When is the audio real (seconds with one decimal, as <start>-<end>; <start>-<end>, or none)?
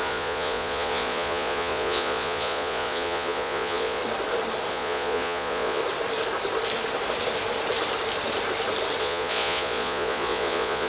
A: 4.0-4.7; 5.8-9.0